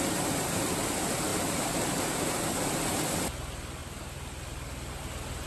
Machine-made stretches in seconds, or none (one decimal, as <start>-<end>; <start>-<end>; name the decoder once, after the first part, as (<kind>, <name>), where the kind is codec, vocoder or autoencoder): 1.3-2.7 (vocoder, BigVGAN v2); 3.8-4.9